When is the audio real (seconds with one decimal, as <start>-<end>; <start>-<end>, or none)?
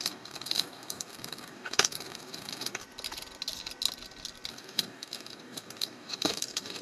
2.8-4.5